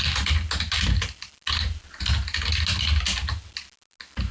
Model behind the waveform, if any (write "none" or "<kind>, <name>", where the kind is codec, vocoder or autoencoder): none